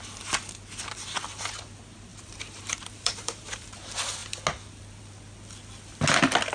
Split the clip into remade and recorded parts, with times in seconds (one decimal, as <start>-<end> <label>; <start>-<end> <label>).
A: 0.0-2.1 recorded; 2.1-3.8 remade; 3.8-6.5 recorded

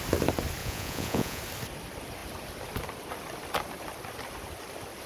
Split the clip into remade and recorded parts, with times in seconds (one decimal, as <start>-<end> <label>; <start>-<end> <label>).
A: 0.0-0.6 recorded; 0.6-1.4 remade; 1.4-5.1 recorded